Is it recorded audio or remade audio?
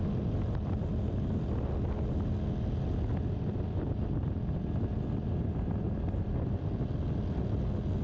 recorded